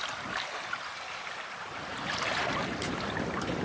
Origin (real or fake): real